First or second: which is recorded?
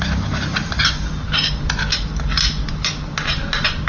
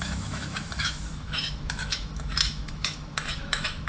first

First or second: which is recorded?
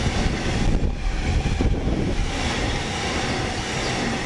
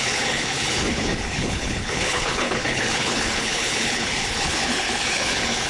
first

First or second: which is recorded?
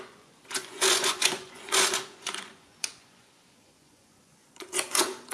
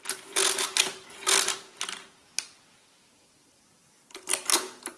second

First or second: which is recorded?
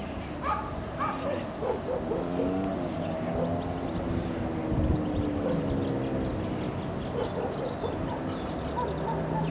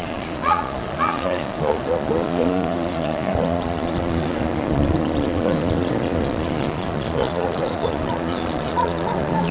first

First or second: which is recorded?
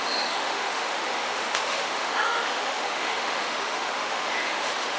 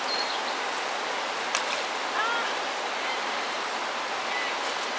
second